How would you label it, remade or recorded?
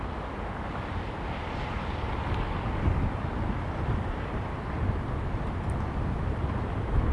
recorded